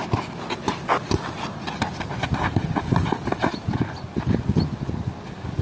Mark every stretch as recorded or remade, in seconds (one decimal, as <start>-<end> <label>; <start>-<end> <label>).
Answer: 0.0-3.4 recorded; 3.4-4.4 remade; 4.4-5.6 recorded